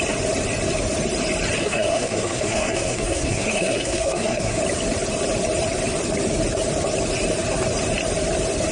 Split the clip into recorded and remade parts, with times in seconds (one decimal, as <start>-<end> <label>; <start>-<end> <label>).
0.0-1.6 recorded; 1.6-4.6 remade; 4.6-8.7 recorded